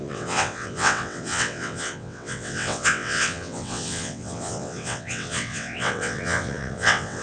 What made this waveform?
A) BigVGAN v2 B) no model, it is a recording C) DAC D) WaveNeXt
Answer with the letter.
D